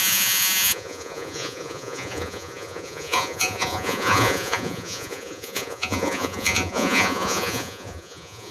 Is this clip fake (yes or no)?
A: yes